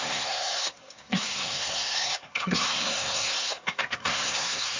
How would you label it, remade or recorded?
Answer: remade